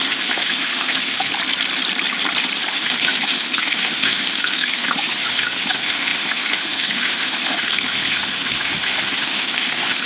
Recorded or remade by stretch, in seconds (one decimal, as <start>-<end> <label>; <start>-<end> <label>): 0.0-1.3 remade; 1.3-2.7 recorded; 2.7-10.1 remade